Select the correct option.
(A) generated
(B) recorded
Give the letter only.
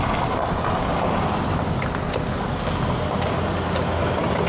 B